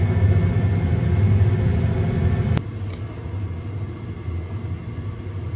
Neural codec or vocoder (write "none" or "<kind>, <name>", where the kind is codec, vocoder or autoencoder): none